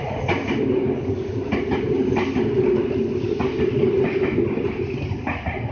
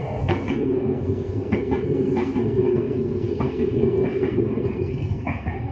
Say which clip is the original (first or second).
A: first